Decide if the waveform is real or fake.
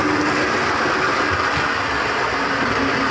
real